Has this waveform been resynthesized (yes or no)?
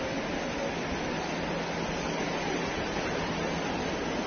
no